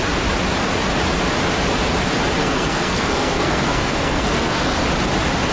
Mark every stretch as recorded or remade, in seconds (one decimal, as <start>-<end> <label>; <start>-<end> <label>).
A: 0.0-2.4 recorded; 2.4-4.8 remade; 4.8-5.5 recorded